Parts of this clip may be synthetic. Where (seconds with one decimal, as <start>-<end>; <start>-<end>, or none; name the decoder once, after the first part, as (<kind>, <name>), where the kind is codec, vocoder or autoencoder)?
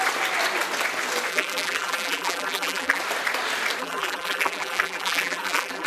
1.3-3.0 (vocoder, BigVGAN v2); 3.8-5.9